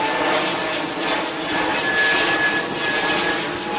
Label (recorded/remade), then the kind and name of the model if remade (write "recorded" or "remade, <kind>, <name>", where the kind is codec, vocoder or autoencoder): recorded